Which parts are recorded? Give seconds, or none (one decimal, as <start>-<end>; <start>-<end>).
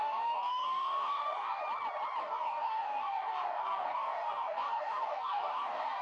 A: 1.6-2.2